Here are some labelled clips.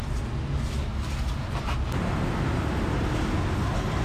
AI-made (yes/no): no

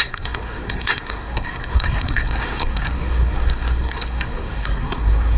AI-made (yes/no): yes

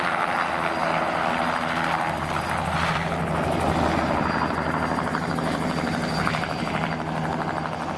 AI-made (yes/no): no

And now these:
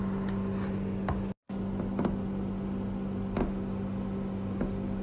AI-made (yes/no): no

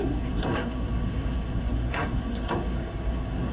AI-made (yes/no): yes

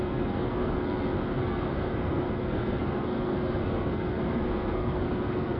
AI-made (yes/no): yes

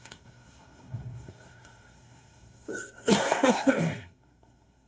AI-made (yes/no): yes